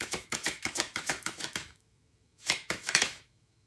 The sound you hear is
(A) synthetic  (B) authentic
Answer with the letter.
A